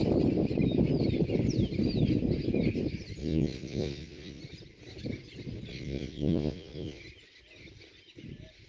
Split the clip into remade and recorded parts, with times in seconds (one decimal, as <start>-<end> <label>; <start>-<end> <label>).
0.0-3.2 recorded; 3.2-4.4 remade; 4.4-5.7 recorded; 5.7-7.0 remade; 7.0-8.7 recorded